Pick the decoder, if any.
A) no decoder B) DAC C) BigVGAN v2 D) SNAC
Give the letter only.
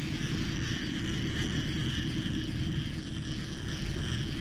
A